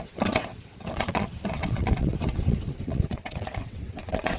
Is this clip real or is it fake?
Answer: fake